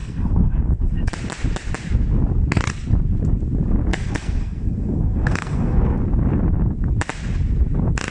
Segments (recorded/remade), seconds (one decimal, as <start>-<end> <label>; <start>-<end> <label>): 0.0-1.1 remade; 1.1-3.9 recorded; 3.9-6.0 remade; 6.0-8.1 recorded

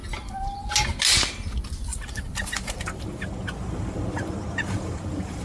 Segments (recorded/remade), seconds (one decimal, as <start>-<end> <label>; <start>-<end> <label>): 0.0-1.9 recorded; 1.9-5.4 remade

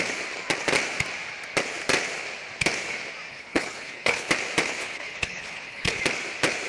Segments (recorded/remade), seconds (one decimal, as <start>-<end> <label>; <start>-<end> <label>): 0.0-3.3 recorded; 3.3-4.3 remade; 4.3-4.8 recorded; 4.8-6.0 remade; 6.0-6.7 recorded

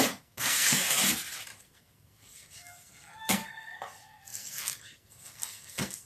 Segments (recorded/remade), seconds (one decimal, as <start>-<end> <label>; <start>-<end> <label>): 0.0-1.0 remade; 1.0-1.6 recorded; 1.6-6.1 remade

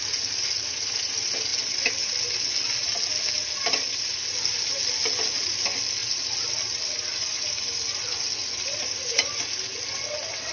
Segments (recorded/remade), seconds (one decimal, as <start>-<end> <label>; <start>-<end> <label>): 0.0-10.5 recorded